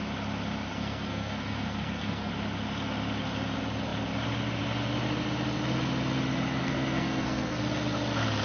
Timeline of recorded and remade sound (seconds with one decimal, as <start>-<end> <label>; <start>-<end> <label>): 0.0-0.7 recorded; 0.7-2.3 remade; 2.3-6.6 recorded; 6.6-7.6 remade; 7.6-8.4 recorded